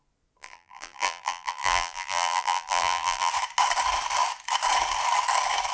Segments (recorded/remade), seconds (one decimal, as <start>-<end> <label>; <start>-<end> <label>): 0.0-0.4 recorded; 0.4-3.3 remade; 3.3-5.7 recorded